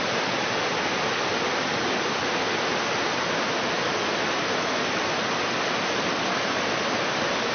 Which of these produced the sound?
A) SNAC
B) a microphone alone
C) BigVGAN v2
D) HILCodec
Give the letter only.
B